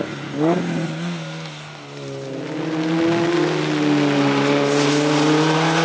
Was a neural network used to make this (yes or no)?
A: no